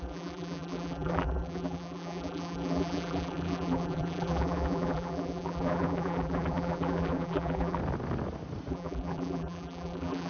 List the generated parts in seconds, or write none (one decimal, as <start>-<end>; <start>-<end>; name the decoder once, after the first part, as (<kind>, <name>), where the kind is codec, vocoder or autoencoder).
0.0-7.8 (vocoder, BigVGAN v2); 8.7-10.3